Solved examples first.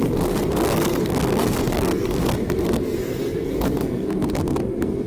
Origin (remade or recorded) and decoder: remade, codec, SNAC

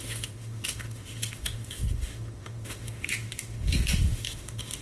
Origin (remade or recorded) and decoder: remade, autoencoder, DAC-VAE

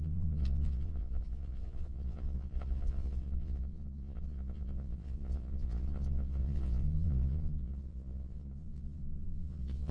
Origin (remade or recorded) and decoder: remade, vocoder, Vocos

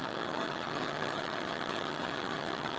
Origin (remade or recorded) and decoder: remade, vocoder, HiFi-GAN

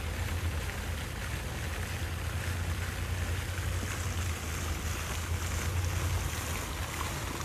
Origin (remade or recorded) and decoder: recorded